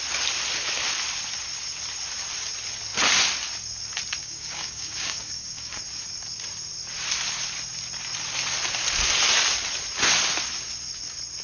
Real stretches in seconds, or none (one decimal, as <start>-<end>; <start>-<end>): 0.0-4.2; 5.8-11.4